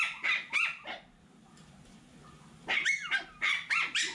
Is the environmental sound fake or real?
real